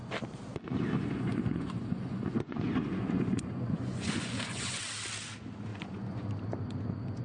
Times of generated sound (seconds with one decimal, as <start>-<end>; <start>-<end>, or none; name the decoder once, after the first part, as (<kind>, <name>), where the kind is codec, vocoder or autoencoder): 0.9-4.8 (vocoder, Vocos); 5.7-6.3